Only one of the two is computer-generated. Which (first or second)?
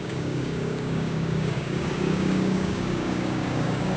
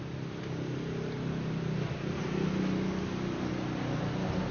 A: first